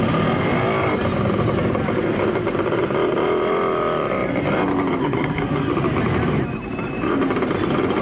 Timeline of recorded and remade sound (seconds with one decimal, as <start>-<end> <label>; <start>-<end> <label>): 0.0-5.0 recorded; 5.0-5.7 remade; 5.7-8.0 recorded